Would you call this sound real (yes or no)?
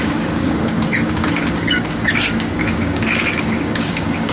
no